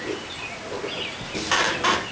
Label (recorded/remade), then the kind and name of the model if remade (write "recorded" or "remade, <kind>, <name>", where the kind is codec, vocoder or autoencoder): recorded